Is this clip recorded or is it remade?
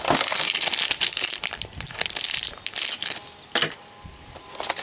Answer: recorded